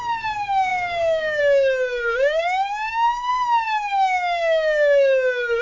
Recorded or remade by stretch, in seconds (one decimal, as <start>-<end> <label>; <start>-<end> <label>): 0.0-5.6 remade